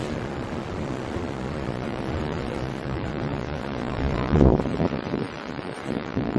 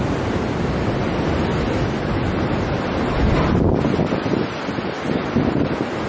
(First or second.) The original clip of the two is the second